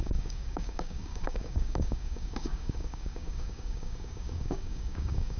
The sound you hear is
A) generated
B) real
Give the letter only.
A